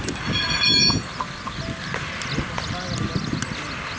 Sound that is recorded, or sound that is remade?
recorded